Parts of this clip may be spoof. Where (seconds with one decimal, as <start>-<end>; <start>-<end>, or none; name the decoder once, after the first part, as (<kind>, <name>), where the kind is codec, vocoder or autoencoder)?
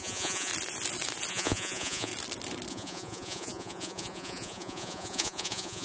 0.0-0.5 (vocoder, Vocos); 1.3-2.1; 2.7-5.8